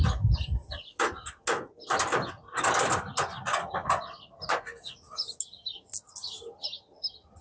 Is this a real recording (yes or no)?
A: yes